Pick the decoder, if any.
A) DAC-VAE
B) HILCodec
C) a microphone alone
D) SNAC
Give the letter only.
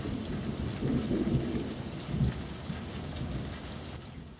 C